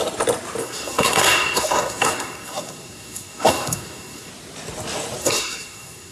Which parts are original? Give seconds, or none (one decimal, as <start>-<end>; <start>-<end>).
0.0-0.6; 4.3-5.2